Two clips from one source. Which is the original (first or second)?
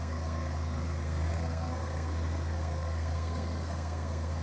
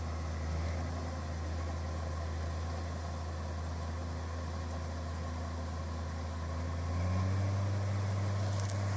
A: second